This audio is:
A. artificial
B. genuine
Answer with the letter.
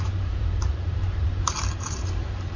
A